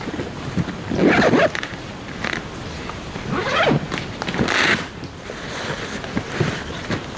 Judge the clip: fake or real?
real